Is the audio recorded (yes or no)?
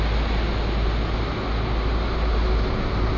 yes